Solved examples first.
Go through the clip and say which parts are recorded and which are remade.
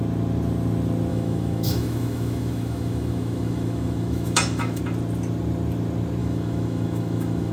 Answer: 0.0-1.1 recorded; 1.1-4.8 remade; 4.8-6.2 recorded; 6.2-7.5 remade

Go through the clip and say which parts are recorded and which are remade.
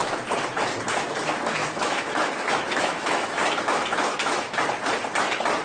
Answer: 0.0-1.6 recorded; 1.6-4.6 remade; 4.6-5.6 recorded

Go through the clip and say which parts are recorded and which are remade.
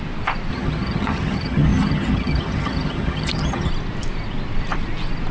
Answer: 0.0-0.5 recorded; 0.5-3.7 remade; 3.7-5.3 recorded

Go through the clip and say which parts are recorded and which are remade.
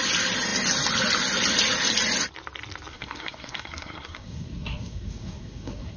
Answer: 0.0-2.9 recorded; 2.9-6.0 remade